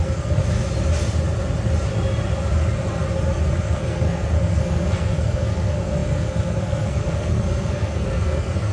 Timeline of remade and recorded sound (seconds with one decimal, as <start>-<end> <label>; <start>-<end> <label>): 0.0-0.4 remade; 0.4-3.5 recorded; 3.5-8.7 remade